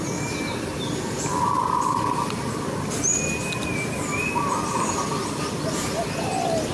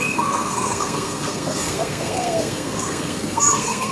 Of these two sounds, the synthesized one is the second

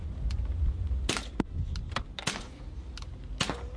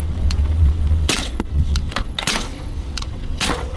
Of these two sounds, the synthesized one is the second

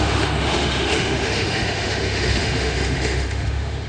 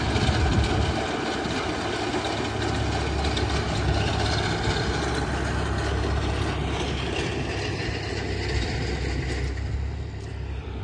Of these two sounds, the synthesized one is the first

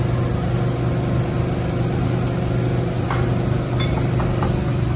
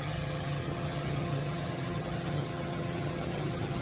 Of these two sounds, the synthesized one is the second